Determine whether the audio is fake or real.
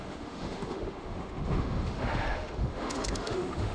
fake